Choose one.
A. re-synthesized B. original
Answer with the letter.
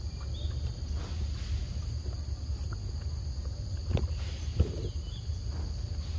B